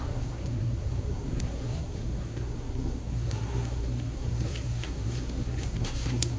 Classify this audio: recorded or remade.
remade